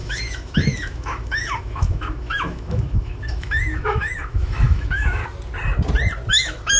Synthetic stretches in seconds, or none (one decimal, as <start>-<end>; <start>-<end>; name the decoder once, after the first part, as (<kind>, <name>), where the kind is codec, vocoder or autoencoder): 0.0-5.2 (autoencoder, DAC-VAE); 6.3-6.8